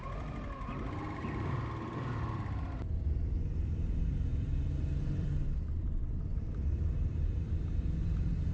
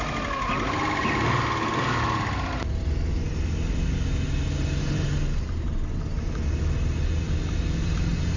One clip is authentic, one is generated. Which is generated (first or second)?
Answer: first